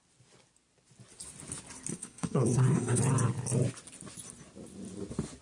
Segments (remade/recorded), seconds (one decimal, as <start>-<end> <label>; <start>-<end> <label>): 0.0-1.9 recorded; 1.9-3.0 remade; 3.0-5.4 recorded